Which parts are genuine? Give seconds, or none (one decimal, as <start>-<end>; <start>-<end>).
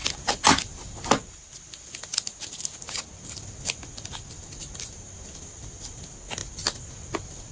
0.0-7.5